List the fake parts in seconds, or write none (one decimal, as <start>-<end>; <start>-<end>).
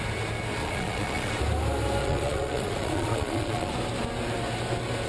0.6-1.3; 2.0-3.7